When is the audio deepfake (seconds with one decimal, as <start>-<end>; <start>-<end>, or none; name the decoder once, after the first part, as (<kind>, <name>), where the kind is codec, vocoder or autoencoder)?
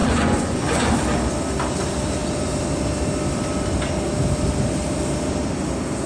0.0-0.9 (vocoder, Vocos)